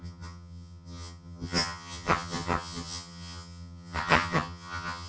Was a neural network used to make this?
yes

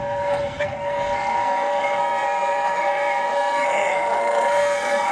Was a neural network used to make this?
yes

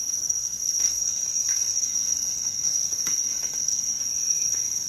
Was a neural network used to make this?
yes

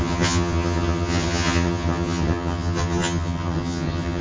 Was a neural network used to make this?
yes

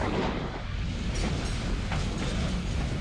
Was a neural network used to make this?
no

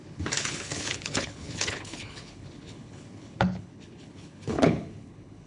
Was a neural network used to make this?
yes